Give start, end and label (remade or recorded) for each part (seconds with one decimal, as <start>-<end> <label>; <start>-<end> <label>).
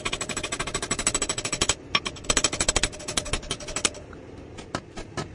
0.0-5.3 recorded